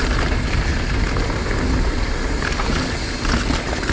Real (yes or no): yes